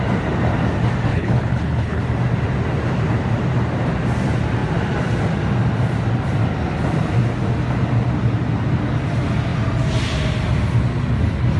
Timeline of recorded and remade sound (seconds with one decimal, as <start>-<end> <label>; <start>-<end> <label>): 0.0-1.1 recorded; 1.1-2.0 remade; 2.0-11.6 recorded